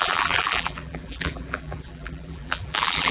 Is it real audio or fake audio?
fake